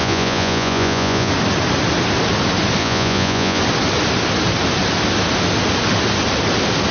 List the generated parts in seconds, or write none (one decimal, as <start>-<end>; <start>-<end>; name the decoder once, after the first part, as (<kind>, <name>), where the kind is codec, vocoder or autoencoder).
0.0-1.3 (vocoder, Vocos); 2.8-3.6